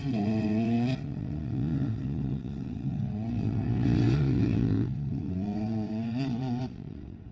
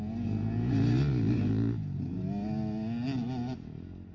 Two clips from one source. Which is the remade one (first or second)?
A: first